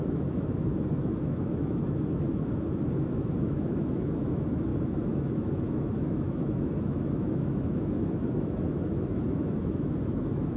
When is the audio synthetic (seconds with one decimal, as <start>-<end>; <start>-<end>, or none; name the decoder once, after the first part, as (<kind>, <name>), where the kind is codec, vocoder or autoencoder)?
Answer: 0.0-10.6 (autoencoder, DAC-VAE)